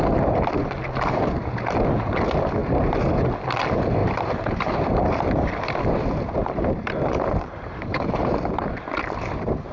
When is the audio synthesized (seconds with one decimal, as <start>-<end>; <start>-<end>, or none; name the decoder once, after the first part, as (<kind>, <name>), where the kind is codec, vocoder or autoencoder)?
4.0-4.7 (vocoder, BigVGAN v2); 6.4-8.2